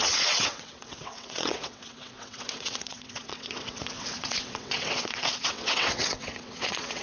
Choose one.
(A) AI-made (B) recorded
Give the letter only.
A